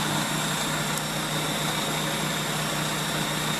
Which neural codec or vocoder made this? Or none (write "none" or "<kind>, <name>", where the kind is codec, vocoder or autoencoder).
none